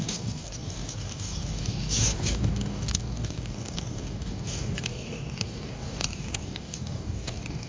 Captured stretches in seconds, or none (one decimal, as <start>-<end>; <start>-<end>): none